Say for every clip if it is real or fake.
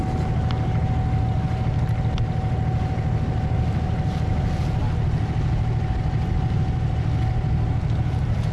real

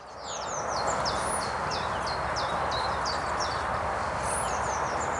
real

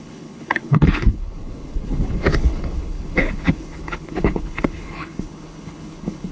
fake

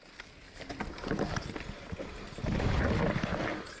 real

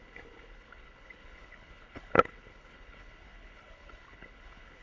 fake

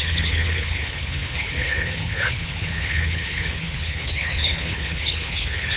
fake